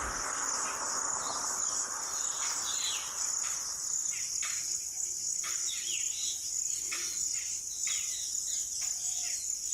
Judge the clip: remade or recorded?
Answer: recorded